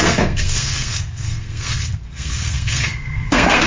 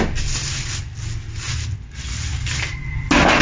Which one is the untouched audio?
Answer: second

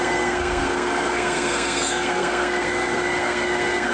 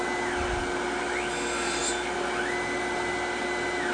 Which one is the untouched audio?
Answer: second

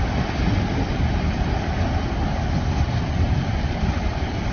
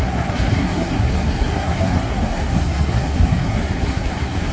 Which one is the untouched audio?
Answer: first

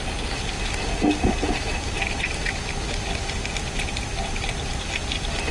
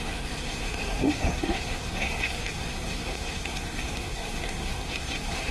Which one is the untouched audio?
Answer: first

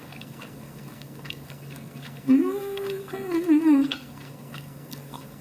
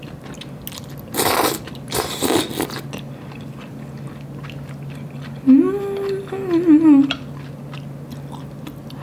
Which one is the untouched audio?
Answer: second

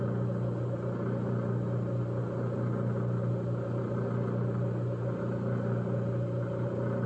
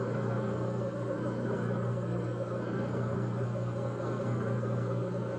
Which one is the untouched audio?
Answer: first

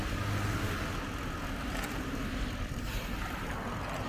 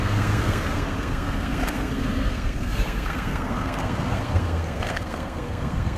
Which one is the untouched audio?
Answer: first